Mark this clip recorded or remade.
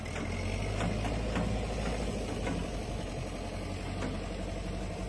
recorded